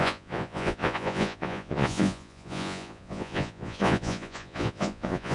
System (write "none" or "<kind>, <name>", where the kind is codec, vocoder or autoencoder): vocoder, Vocos